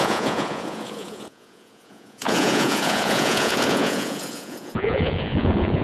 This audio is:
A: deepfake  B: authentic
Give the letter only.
A